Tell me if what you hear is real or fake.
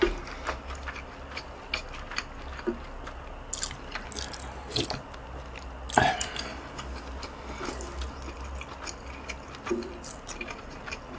real